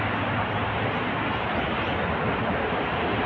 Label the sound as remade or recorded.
recorded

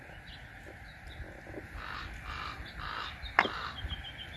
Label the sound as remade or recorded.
recorded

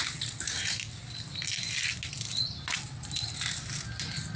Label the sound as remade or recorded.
recorded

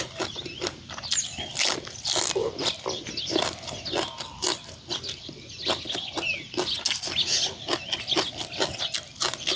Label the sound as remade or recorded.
recorded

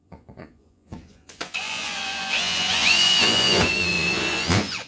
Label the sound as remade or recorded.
remade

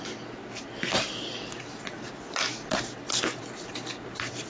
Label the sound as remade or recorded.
recorded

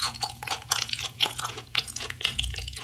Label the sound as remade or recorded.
remade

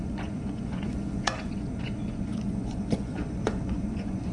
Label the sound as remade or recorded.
remade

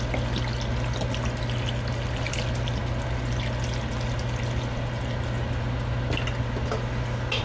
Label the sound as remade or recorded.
recorded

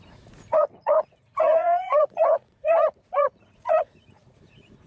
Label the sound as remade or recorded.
remade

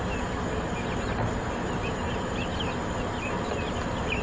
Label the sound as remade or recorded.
recorded